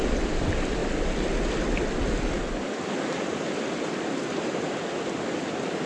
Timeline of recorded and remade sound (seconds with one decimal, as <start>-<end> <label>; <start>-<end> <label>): 0.0-0.8 remade; 0.8-2.2 recorded; 2.2-5.9 remade